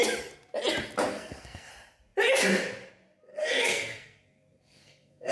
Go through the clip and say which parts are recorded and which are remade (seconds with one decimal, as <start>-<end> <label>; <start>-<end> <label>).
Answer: 0.0-1.1 recorded; 1.1-1.7 remade; 1.7-3.3 recorded; 3.3-5.3 remade